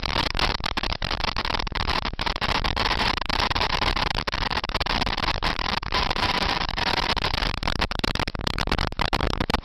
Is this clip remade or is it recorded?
remade